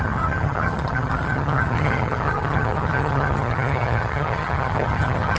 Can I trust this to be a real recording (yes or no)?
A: no